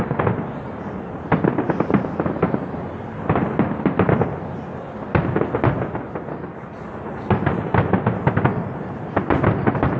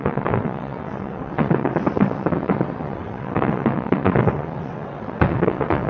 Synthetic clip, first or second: second